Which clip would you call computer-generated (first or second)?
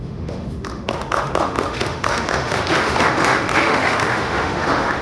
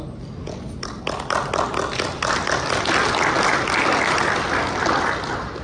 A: first